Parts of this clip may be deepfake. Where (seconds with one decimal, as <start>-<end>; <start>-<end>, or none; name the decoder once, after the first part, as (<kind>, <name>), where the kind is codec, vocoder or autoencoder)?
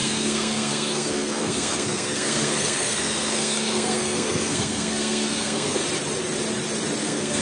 0.0-5.8 (codec, SNAC); 7.0-7.4